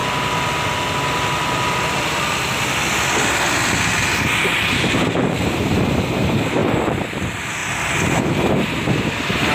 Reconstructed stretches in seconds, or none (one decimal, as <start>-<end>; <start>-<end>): 4.9-6.6; 7.1-7.6; 8.2-9.5